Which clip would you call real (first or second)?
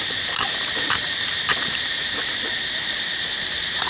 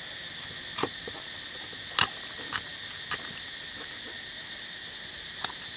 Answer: second